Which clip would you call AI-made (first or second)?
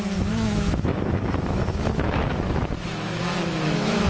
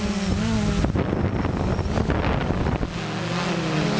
first